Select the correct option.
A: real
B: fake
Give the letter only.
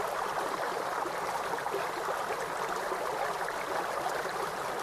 A